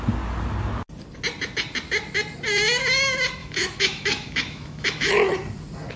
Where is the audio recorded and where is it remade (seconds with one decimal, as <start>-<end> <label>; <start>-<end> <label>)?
0.0-3.4 recorded; 3.4-5.1 remade; 5.1-6.0 recorded